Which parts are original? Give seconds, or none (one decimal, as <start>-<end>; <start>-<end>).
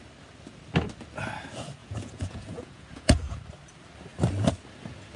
0.0-1.8; 3.4-5.2